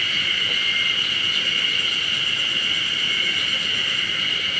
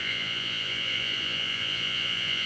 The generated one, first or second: second